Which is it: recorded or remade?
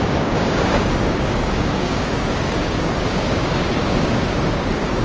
remade